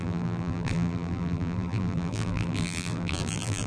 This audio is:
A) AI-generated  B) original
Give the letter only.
A